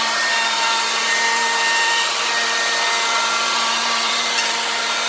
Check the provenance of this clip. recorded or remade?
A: remade